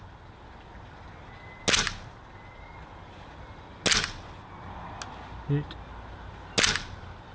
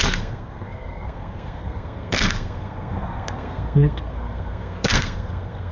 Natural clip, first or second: first